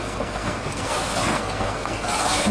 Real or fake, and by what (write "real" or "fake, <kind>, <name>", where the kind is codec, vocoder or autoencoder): fake, codec, SNAC